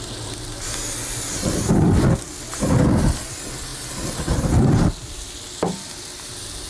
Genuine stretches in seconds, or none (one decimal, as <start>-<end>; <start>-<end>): 0.0-6.7